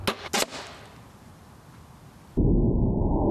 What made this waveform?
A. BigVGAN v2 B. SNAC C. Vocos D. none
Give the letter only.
D